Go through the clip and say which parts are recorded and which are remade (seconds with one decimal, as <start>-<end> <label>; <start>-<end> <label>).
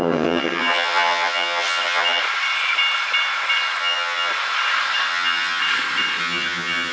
0.0-2.2 remade; 2.2-3.8 recorded; 3.8-4.3 remade; 4.3-5.1 recorded; 5.1-5.6 remade; 5.6-6.2 recorded; 6.2-6.9 remade